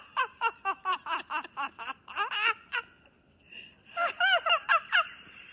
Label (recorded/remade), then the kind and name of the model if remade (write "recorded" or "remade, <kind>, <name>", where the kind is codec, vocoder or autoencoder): recorded